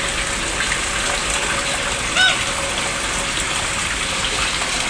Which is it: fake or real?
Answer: real